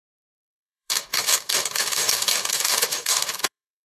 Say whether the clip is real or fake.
fake